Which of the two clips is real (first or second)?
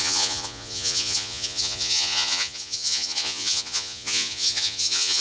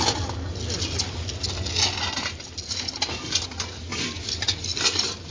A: second